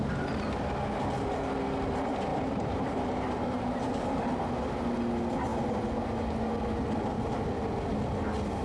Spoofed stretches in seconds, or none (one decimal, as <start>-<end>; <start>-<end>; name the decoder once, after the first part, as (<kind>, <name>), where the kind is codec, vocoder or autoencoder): 2.3-4.2 (vocoder, BigVGAN v2)